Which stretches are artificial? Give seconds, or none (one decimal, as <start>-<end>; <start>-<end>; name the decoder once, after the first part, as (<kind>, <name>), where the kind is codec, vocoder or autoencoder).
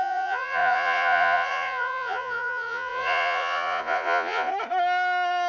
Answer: 0.0-4.5 (vocoder, Vocos)